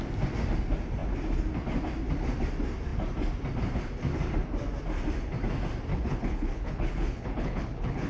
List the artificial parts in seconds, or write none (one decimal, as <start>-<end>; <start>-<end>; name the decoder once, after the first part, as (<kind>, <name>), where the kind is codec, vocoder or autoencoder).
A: 5.9-8.1 (codec, HILCodec)